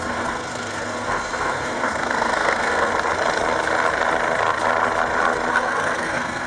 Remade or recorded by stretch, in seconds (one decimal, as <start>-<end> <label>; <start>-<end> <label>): 0.0-2.9 remade; 2.9-5.5 recorded; 5.5-6.5 remade